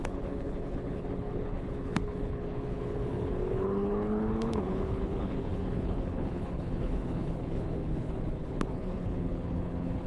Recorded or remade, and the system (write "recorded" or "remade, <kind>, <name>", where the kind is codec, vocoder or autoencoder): remade, codec, HILCodec